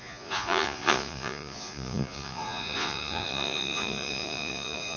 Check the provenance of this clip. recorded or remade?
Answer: remade